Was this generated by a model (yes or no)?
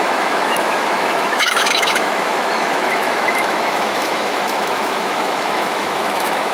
yes